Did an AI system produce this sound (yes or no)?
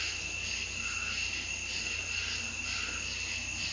no